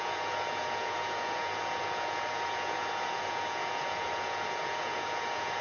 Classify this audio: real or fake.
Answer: fake